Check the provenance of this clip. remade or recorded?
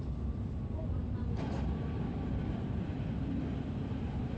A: remade